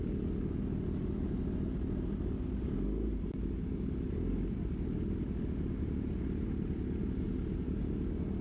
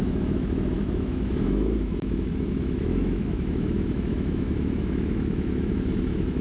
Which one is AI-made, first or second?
second